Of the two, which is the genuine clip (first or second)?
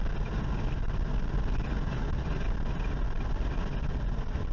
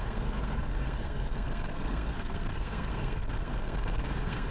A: first